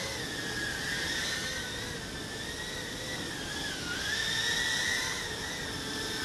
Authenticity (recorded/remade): recorded